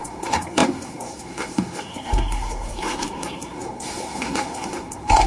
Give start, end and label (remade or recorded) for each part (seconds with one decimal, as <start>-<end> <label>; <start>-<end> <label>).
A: 0.0-5.3 remade